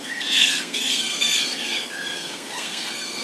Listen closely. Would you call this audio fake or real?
fake